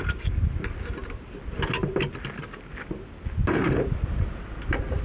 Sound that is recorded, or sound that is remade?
recorded